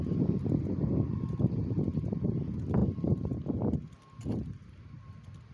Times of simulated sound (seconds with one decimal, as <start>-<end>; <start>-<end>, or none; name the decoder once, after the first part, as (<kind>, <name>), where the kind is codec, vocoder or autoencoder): none